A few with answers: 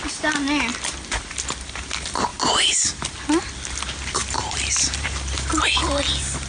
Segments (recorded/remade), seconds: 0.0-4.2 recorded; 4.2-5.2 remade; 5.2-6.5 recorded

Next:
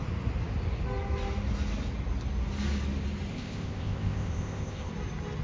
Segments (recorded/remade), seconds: 0.0-3.3 recorded; 3.3-4.9 remade; 4.9-5.4 recorded

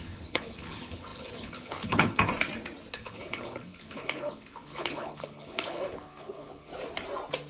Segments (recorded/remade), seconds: 0.0-2.3 remade; 2.3-2.9 recorded; 2.9-6.7 remade; 6.7-7.5 recorded